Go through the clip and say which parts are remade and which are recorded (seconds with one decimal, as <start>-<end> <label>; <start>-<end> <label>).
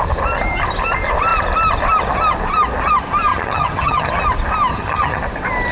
0.0-3.3 recorded; 3.3-4.1 remade; 4.1-4.7 recorded; 4.7-5.2 remade; 5.2-5.7 recorded